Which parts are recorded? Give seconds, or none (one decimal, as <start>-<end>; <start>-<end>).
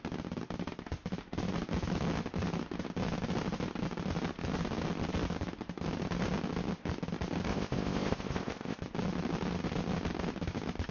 0.0-7.5; 8.8-10.9